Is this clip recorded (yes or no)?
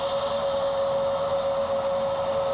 yes